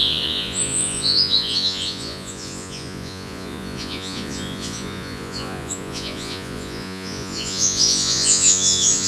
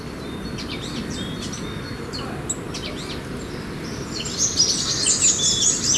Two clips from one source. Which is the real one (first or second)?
second